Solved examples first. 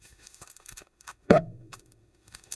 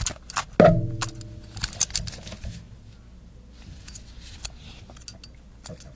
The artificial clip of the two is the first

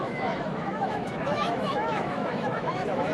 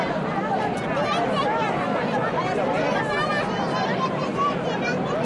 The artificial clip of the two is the first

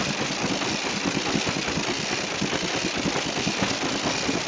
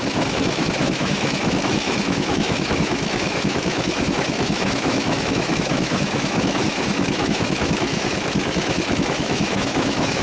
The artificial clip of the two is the second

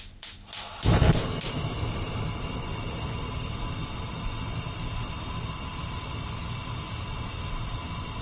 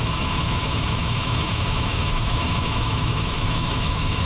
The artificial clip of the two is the second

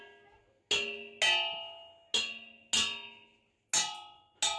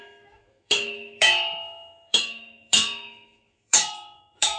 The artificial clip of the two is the second